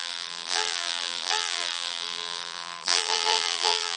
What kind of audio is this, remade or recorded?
remade